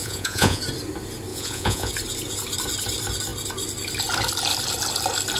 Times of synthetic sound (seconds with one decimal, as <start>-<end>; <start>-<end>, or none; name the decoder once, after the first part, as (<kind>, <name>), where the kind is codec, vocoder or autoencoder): 0.0-0.6 (vocoder, Vocos); 1.3-1.9